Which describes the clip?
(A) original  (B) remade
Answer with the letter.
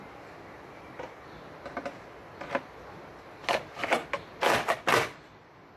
A